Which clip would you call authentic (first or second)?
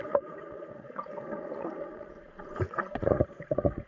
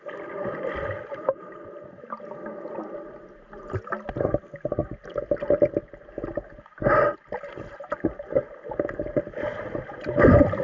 second